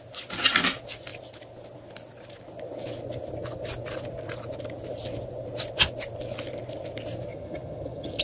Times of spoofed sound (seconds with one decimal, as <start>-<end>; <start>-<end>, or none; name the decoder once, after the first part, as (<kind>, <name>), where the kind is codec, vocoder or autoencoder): 7.3-8.2 (vocoder, HiFi-GAN)